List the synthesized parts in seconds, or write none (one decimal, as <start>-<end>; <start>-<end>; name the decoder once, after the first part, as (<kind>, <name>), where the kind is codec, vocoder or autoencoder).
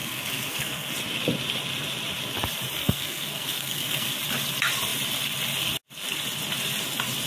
0.0-0.9 (codec, SNAC); 2.8-4.2